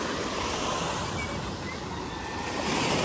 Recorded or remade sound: recorded